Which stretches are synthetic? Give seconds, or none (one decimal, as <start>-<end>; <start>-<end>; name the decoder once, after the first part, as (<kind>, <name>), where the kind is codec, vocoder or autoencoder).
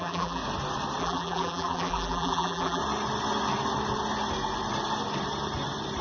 0.0-0.4 (vocoder, BigVGAN v2); 1.0-2.8